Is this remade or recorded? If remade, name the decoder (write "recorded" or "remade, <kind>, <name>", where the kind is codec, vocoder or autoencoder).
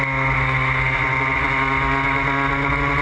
recorded